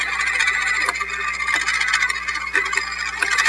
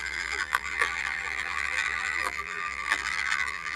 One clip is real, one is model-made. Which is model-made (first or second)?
second